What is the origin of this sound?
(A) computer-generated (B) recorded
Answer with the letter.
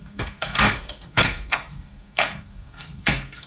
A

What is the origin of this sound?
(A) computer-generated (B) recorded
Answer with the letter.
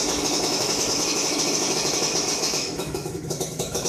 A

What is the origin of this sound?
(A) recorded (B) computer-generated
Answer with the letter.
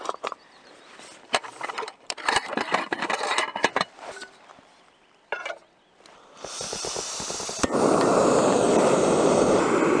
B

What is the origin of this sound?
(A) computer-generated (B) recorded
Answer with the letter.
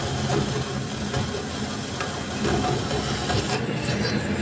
B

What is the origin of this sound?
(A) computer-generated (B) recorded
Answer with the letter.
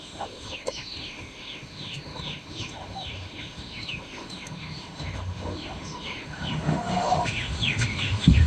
A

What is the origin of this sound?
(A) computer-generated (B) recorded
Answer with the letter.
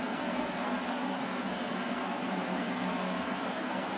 A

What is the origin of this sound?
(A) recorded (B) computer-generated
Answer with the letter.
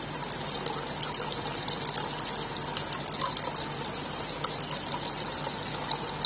A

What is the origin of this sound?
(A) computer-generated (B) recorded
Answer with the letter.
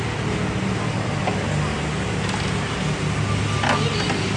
B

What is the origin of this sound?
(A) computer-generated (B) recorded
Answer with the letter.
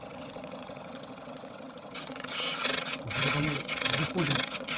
A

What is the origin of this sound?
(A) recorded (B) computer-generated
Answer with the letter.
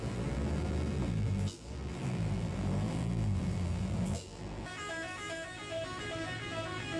B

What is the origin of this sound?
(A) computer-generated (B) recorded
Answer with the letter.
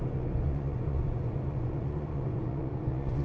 A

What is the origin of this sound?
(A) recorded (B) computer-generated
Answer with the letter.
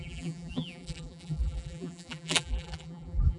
B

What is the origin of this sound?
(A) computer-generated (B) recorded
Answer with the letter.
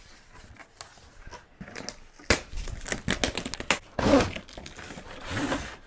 B